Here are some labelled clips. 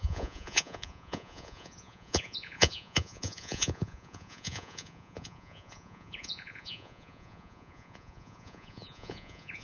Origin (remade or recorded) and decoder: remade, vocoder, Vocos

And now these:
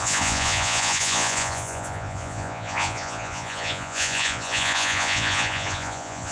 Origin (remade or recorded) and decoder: remade, vocoder, Vocos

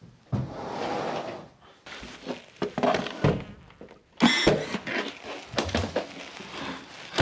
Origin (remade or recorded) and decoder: recorded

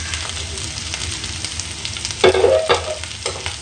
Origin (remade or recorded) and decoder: recorded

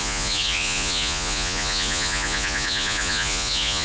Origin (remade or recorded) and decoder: remade, vocoder, Vocos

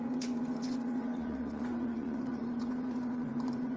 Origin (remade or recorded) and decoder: remade, vocoder, Vocos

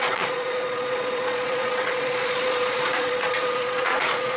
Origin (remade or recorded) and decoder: remade, vocoder, Vocos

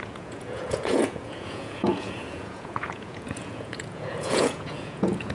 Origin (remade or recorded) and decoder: remade, vocoder, Vocos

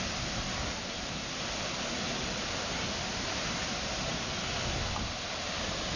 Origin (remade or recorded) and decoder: recorded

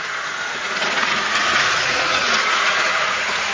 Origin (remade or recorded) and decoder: remade, vocoder, Vocos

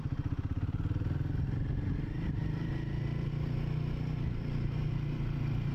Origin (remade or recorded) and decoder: recorded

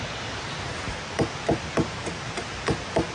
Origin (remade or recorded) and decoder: recorded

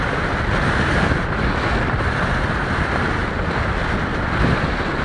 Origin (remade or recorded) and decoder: recorded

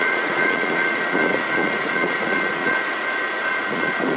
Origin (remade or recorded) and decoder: remade, vocoder, Vocos